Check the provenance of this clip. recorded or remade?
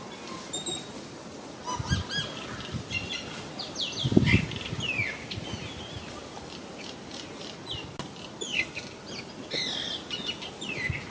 recorded